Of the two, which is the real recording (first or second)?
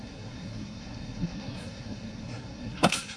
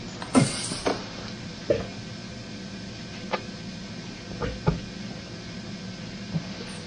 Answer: second